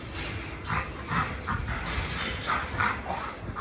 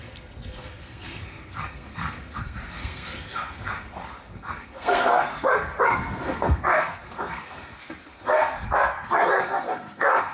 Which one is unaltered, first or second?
first